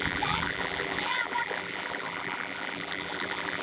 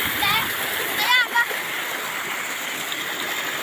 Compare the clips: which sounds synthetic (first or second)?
first